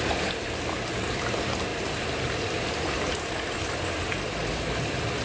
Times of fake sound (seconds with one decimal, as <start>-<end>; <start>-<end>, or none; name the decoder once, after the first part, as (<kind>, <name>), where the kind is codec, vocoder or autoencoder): 0.0-5.2 (vocoder, BigVGAN v2)